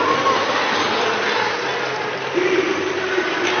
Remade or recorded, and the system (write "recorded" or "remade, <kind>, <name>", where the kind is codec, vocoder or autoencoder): recorded